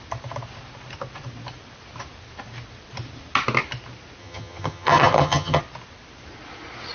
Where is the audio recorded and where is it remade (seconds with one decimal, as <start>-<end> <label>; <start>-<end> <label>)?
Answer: 0.0-4.2 recorded; 4.2-5.6 remade; 5.6-6.9 recorded